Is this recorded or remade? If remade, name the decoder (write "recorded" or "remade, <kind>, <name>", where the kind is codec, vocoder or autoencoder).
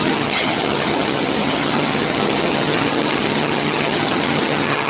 remade, vocoder, HiFi-GAN